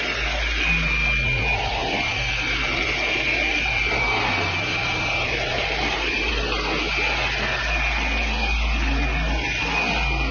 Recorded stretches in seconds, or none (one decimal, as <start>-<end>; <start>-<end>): 0.0-1.8; 6.3-10.3